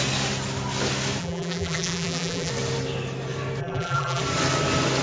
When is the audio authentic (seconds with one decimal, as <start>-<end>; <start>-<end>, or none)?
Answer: 0.0-1.2; 2.5-3.6; 4.2-5.0